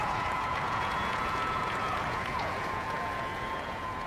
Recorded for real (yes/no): no